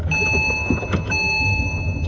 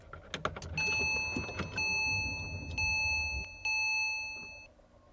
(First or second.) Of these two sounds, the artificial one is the first